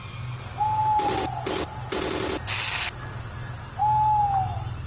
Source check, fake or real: real